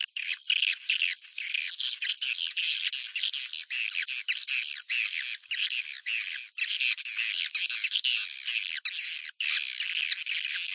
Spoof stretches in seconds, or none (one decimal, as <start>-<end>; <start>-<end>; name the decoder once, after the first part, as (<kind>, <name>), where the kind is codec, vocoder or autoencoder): none